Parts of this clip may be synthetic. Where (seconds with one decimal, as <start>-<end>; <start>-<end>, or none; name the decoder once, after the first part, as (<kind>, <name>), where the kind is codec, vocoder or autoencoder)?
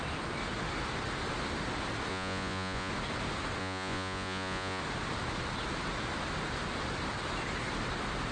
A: 2.1-2.9 (vocoder, Vocos); 3.6-4.8